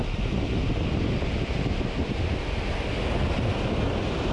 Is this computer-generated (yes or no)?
no